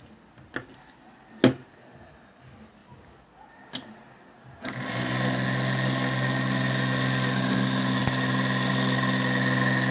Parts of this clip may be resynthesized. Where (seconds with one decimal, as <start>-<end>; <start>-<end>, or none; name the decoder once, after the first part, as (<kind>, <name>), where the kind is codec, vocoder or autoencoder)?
none